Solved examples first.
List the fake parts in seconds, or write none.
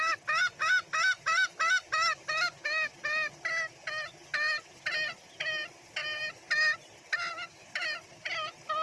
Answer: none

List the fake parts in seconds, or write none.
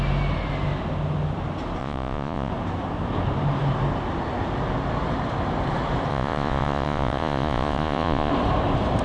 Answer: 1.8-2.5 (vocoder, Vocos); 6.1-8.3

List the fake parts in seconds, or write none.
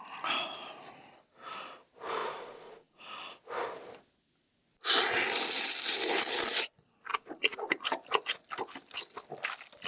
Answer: 2.2-3.0 (vocoder, Vocos); 7.1-7.7